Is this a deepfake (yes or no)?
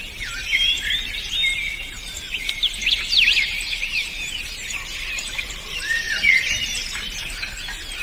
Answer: yes